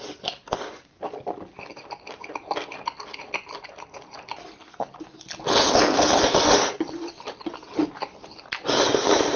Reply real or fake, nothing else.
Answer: real